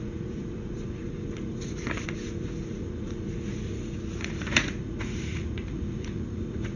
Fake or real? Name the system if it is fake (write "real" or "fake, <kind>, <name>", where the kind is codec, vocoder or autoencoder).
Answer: fake, vocoder, Vocos